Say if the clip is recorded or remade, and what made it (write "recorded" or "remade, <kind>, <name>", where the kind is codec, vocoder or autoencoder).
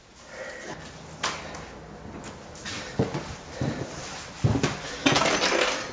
recorded